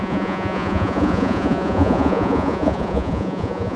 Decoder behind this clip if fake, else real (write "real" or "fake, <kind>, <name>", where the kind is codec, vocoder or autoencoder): fake, vocoder, Vocos